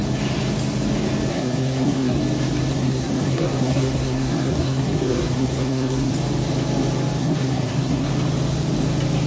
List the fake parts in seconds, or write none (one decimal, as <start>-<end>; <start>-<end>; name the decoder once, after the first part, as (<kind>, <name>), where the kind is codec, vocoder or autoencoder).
1.3-2.2 (codec, SNAC); 2.7-6.1; 7.2-8.1